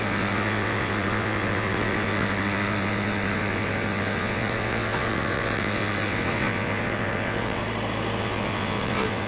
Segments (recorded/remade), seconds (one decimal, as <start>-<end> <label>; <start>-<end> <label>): 0.0-7.6 remade; 7.6-8.2 recorded; 8.2-9.3 remade